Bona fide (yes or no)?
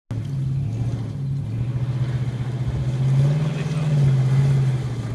yes